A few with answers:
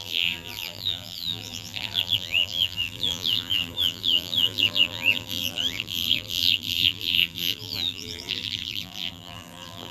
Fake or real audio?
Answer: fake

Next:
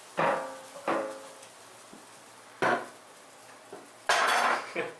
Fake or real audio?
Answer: real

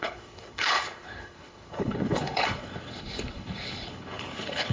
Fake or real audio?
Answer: fake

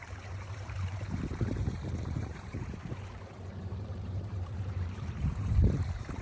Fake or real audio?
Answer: fake